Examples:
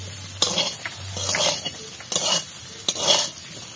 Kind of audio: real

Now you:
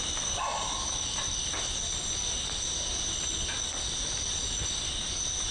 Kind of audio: real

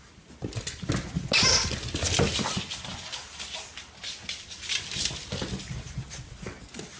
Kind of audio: real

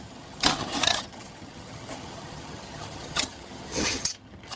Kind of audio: fake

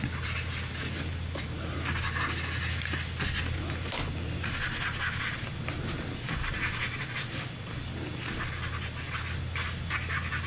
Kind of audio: real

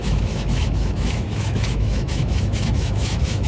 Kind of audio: fake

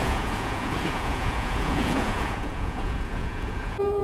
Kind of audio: fake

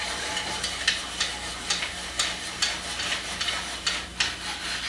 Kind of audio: real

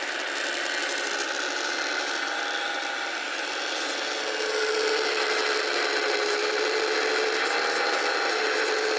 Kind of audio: real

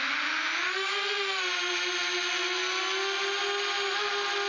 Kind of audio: real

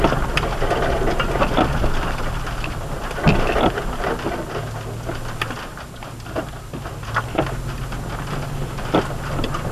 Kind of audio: real